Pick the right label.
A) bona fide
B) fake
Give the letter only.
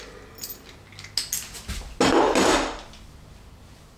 A